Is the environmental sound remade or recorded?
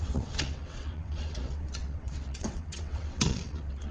remade